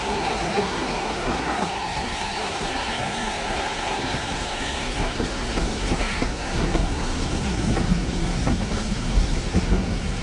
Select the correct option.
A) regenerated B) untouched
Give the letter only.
A